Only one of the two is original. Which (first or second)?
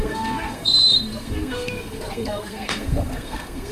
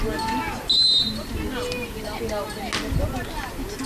second